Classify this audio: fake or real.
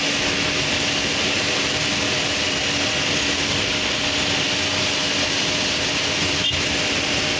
real